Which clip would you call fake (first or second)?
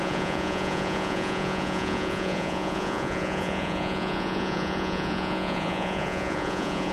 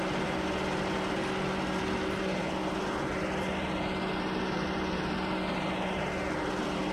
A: first